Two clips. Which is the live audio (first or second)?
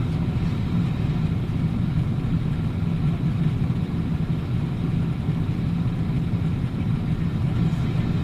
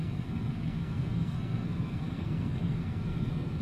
first